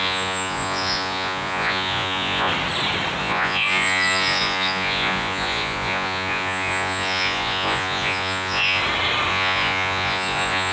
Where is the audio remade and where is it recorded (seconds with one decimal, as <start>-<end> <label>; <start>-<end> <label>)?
0.0-2.5 remade; 2.5-3.2 recorded; 3.2-8.8 remade; 8.8-9.3 recorded; 9.3-10.7 remade